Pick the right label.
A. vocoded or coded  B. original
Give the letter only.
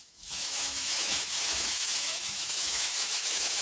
A